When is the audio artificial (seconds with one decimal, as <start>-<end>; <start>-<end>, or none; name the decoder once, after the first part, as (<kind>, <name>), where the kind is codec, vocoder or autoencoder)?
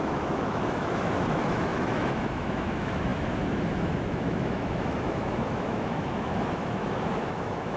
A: 0.0-7.8 (autoencoder, DAC-VAE)